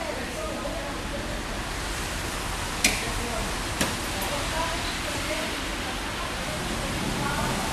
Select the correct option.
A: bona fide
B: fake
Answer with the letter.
A